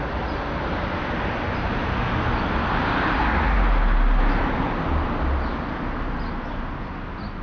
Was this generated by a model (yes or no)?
no